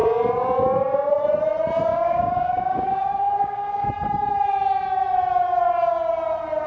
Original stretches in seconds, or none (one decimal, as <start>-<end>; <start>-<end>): 0.0-1.9; 3.9-6.7